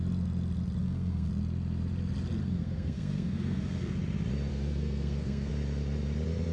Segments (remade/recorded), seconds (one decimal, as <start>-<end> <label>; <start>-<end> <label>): 0.0-0.8 recorded; 0.8-1.3 remade; 1.3-2.4 recorded; 2.4-4.0 remade; 4.0-4.5 recorded; 4.5-5.5 remade; 5.5-6.5 recorded